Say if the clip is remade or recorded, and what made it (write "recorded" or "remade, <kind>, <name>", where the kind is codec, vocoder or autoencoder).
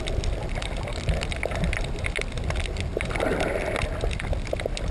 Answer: recorded